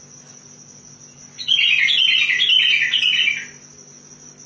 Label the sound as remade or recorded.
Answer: recorded